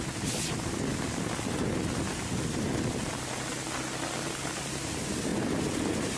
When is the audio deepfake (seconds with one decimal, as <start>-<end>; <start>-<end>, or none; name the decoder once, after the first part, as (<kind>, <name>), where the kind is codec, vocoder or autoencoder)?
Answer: 0.0-0.9 (vocoder, BigVGAN v2); 4.6-5.3